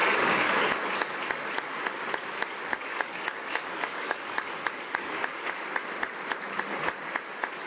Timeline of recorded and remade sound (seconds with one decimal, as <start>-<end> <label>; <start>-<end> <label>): 0.0-0.7 remade; 0.7-2.7 recorded; 2.7-5.5 remade; 5.5-7.7 recorded